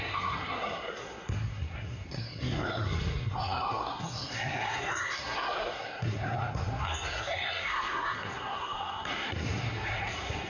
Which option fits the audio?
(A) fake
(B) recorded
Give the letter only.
A